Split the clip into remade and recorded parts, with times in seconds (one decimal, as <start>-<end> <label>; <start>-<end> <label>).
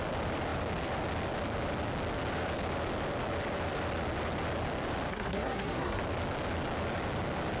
0.0-5.1 recorded; 5.1-6.0 remade; 6.0-7.6 recorded